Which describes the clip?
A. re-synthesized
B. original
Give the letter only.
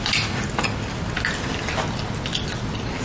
B